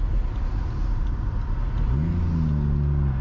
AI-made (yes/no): no